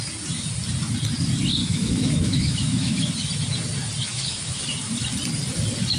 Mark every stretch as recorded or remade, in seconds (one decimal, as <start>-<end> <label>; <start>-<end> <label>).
0.0-1.6 recorded; 1.6-3.1 remade; 3.1-4.1 recorded; 4.1-4.6 remade; 4.6-6.0 recorded